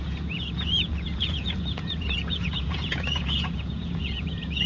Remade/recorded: remade